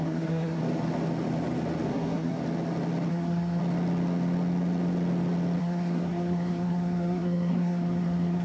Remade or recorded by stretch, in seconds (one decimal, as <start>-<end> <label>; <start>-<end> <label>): 0.0-0.6 remade; 0.6-1.9 recorded; 1.9-2.4 remade; 2.4-3.1 recorded; 3.1-3.6 remade; 3.6-5.6 recorded; 5.6-8.4 remade